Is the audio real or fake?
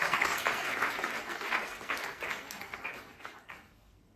fake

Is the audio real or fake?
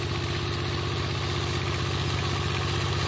real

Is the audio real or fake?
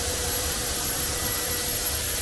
fake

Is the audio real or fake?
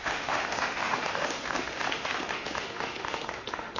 fake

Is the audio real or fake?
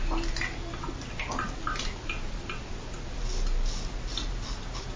real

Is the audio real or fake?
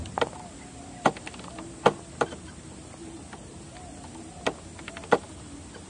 real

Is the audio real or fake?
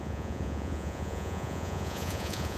fake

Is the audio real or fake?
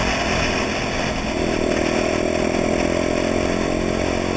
real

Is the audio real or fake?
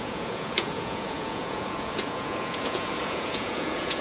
fake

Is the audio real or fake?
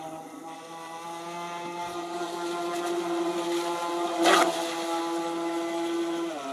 real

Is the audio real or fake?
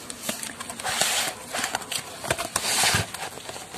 real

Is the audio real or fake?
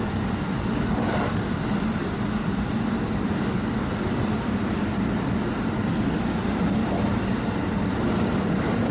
fake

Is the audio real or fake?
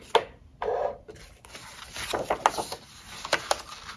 real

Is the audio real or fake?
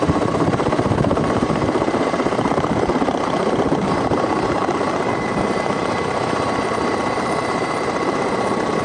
fake